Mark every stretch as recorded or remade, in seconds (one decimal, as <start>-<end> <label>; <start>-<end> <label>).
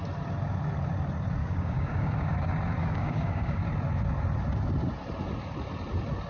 0.0-1.4 recorded; 1.4-2.3 remade; 2.3-2.8 recorded; 2.8-3.6 remade; 3.6-6.3 recorded